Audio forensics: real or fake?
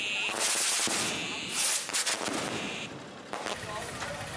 real